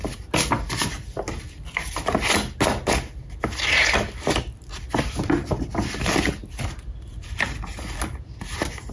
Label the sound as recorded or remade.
recorded